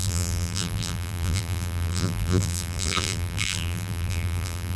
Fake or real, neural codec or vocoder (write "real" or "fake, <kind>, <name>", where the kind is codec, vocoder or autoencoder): fake, vocoder, BigVGAN v2